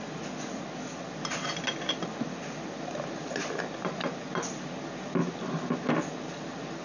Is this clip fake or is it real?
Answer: real